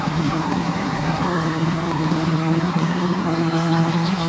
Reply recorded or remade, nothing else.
remade